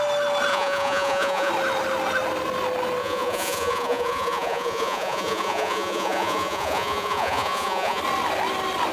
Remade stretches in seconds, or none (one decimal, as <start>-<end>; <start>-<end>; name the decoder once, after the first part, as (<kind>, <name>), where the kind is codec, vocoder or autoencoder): 0.5-1.5 (vocoder, Vocos); 3.0-8.0